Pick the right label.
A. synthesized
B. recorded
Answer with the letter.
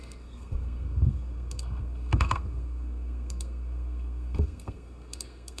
A